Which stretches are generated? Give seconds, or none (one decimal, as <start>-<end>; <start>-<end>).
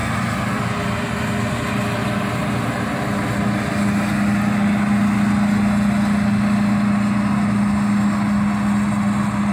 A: 0.0-0.7; 2.0-2.8